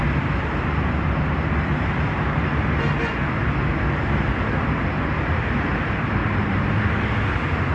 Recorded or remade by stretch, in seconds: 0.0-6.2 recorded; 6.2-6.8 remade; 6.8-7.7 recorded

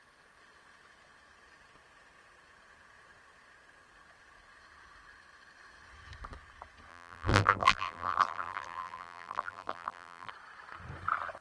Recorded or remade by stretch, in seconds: 0.0-6.9 recorded; 6.9-10.3 remade; 10.3-11.4 recorded

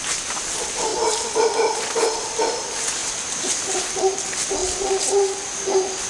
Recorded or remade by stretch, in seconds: 0.0-6.1 recorded

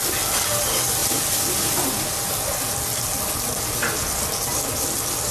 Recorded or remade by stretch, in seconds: 0.0-5.3 recorded

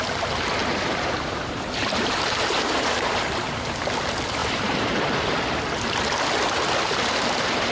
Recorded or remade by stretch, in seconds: 0.0-0.6 recorded; 0.6-3.8 remade; 3.8-4.4 recorded; 4.4-5.4 remade; 5.4-7.7 recorded

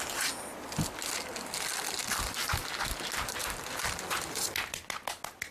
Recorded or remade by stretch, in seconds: 0.0-5.5 recorded